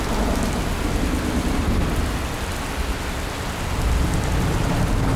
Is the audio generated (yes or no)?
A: no